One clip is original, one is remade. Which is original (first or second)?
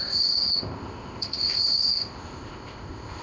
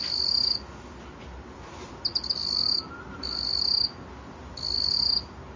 second